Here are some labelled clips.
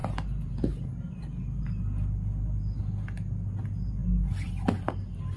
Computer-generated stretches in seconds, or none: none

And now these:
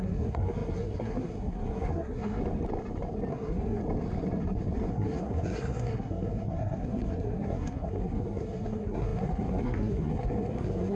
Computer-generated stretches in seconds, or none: 0.0-2.4 (codec, SNAC); 3.3-3.8; 4.9-11.0

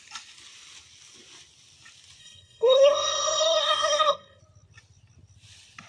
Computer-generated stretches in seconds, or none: 2.2-4.4 (codec, SNAC)

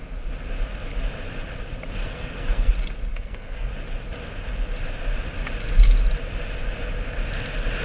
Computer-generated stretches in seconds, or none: 2.0-2.7 (codec, SNAC); 3.1-3.7

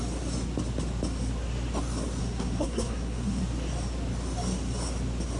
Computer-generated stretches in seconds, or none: 2.2-3.4 (codec, SNAC)